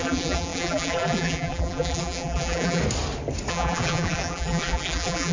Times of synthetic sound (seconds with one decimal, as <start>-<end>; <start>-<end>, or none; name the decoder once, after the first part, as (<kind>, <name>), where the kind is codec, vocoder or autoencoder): 0.0-2.8 (vocoder, BigVGAN v2); 3.5-5.3